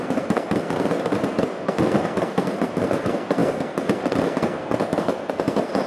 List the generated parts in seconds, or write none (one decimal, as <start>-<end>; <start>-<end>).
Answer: 0.0-5.9